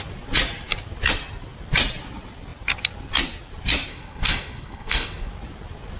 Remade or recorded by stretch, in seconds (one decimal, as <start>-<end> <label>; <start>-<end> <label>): 0.0-3.9 recorded; 3.9-5.3 remade; 5.3-6.0 recorded